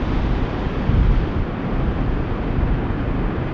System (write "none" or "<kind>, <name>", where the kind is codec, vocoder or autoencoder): none